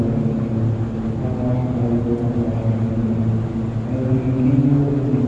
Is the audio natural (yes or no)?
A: yes